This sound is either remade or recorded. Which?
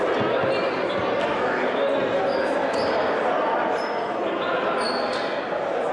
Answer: recorded